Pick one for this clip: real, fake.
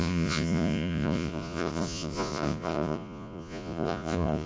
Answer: fake